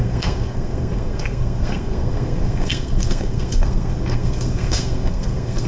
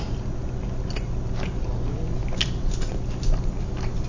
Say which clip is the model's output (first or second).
first